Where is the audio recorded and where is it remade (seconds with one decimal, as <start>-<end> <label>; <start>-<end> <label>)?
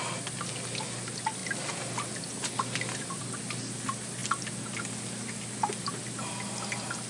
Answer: 0.0-7.1 recorded